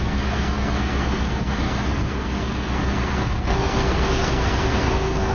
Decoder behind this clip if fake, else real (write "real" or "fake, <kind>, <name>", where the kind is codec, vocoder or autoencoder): fake, codec, SNAC